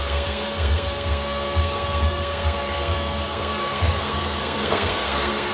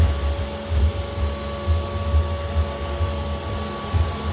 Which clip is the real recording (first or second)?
second